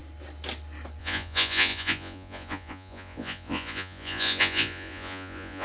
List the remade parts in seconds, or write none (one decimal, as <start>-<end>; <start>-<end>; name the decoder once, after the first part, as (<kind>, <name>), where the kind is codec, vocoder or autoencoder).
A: 1.0-5.6 (vocoder, Vocos)